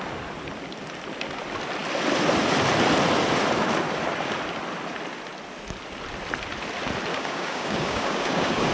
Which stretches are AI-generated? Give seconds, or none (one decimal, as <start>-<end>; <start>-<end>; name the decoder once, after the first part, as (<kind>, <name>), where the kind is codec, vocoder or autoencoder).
7.1-8.7 (codec, DAC)